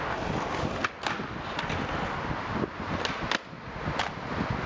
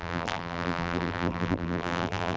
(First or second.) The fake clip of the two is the second